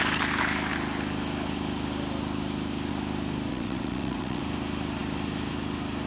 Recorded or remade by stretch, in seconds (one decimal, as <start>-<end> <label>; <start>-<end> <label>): 0.0-3.5 recorded; 3.5-4.4 remade; 4.4-6.1 recorded